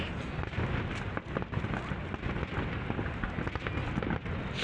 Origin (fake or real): real